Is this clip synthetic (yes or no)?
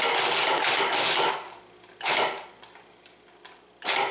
no